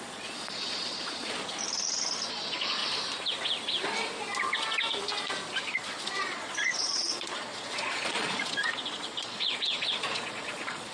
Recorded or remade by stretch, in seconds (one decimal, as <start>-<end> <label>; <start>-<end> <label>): 0.0-1.4 remade; 1.4-2.3 recorded; 2.3-2.8 remade; 2.8-5.6 recorded; 5.6-10.9 remade